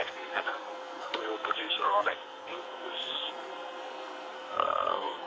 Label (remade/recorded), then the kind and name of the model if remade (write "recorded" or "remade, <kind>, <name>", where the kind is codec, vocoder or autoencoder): remade, codec, SNAC